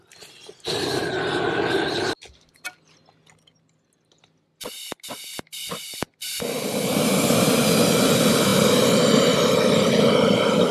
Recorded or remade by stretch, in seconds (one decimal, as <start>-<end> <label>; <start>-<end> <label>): 0.0-10.7 recorded